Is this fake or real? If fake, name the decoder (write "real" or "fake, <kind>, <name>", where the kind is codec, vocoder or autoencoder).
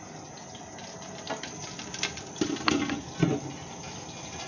real